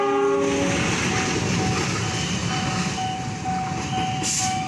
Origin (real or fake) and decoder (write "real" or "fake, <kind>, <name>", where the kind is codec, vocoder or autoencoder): real